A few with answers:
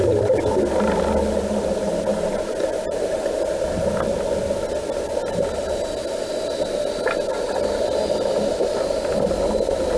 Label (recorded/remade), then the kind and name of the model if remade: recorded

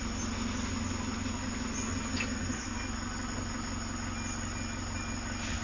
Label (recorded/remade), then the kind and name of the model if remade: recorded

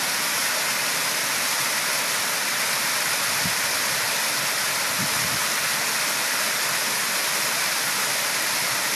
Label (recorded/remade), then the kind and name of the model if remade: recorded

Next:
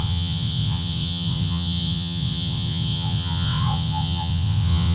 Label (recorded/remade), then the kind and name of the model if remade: remade, vocoder, WaveNeXt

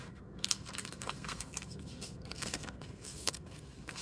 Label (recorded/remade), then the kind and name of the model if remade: remade, codec, SNAC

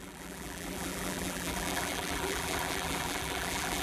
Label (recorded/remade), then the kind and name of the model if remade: remade, vocoder, BigVGAN v2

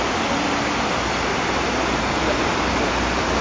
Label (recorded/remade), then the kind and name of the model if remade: recorded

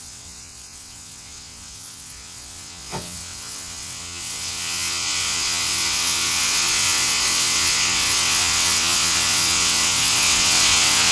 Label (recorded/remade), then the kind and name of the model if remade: remade, vocoder, WaveNeXt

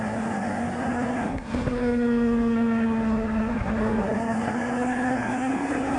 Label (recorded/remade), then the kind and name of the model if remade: remade, codec, SNAC